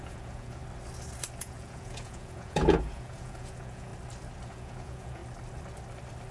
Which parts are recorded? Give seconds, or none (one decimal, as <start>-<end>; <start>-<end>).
0.6-1.4; 3.9-4.5; 5.2-6.3

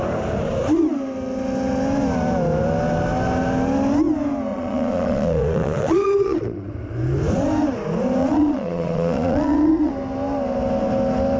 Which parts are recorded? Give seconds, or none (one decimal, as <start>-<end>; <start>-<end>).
0.0-4.5; 6.7-8.2; 9.9-11.4